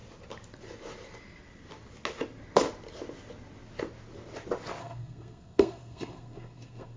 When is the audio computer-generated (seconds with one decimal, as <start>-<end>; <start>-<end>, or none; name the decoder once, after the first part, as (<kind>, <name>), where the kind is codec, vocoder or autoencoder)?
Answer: 4.8-7.0 (codec, SNAC)